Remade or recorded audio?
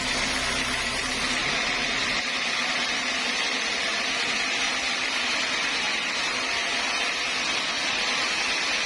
recorded